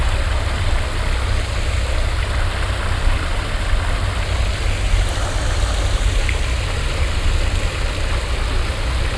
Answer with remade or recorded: recorded